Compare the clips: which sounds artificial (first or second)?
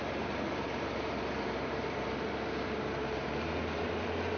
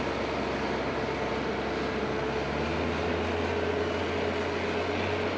first